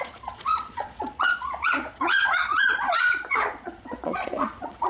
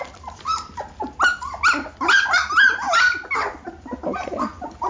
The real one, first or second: second